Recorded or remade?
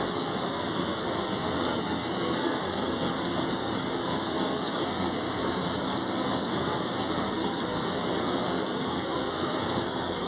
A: remade